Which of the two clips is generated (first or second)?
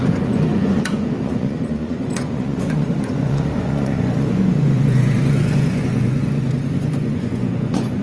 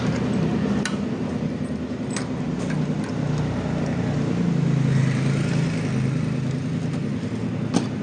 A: first